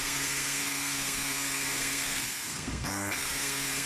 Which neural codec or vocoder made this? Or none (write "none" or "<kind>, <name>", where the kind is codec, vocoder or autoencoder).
codec, SNAC